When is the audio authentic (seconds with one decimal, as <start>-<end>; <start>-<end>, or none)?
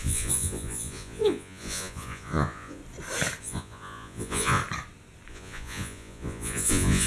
2.8-3.4; 4.6-5.3